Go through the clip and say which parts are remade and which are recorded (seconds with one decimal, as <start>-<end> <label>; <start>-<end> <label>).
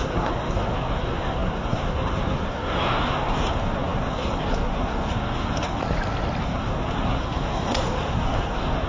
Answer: 0.0-5.8 remade; 5.8-6.4 recorded; 6.4-8.9 remade